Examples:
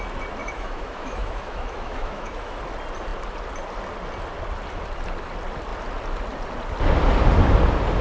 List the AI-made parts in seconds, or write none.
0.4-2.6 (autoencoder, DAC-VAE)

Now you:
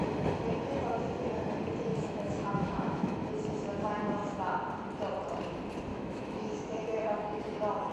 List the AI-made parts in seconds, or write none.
1.9-3.3 (autoencoder, DAC-VAE); 5.9-7.4

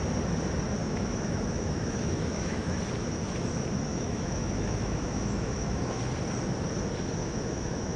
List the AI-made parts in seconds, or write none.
0.8-2.8 (autoencoder, DAC-VAE); 3.9-6.0; 7.2-8.0

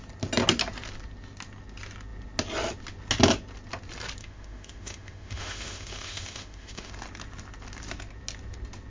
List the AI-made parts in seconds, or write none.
4.2-6.9 (autoencoder, DAC-VAE)

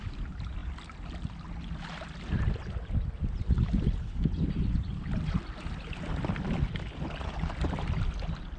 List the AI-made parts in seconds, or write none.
none

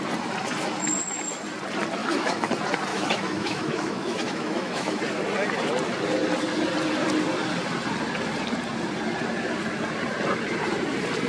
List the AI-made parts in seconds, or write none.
2.0-2.5 (autoencoder, DAC-VAE); 2.9-5.0

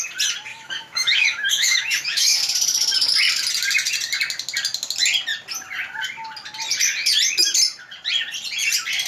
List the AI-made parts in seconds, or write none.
0.5-2.4 (autoencoder, DAC-VAE)

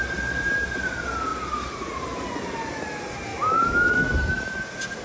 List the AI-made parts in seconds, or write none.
3.3-4.6 (autoencoder, DAC-VAE)